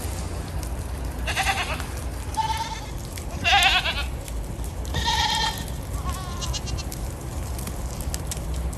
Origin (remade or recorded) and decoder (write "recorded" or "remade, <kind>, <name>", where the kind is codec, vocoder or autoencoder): recorded